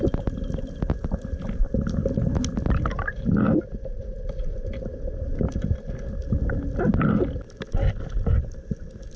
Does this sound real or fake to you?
real